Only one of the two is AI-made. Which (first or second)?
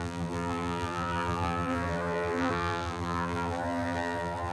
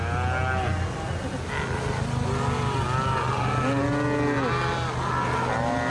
first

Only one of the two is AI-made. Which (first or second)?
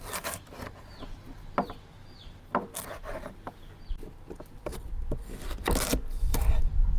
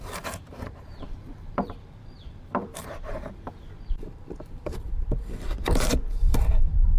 second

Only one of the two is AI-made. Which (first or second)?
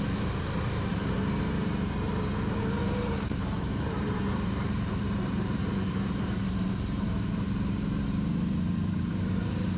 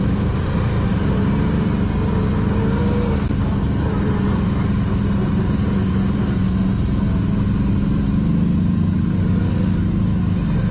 first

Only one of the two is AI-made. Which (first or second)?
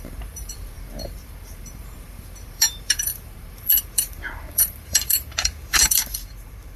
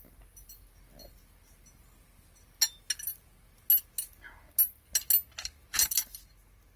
first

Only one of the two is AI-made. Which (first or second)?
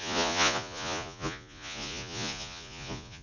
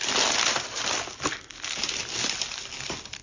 first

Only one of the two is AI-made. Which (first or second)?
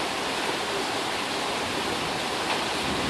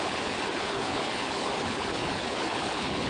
second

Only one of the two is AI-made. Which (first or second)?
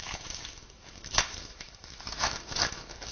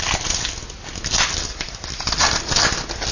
first